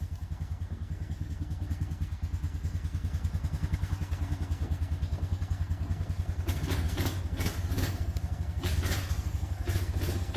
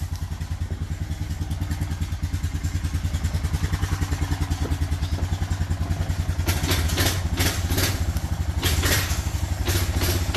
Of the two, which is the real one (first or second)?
second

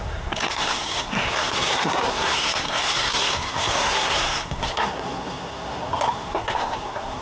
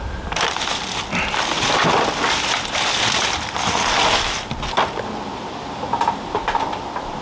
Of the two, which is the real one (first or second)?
second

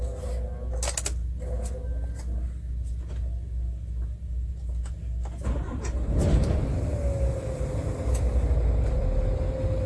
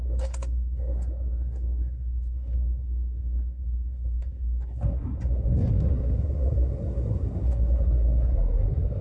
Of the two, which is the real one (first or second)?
first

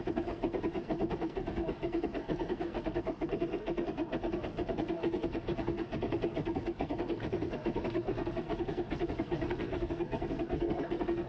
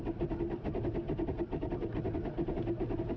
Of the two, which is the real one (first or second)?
second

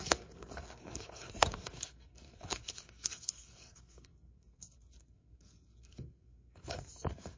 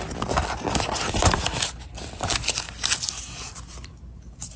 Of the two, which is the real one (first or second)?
second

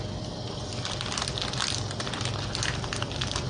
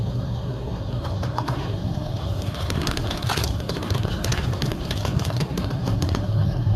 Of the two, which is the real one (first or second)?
first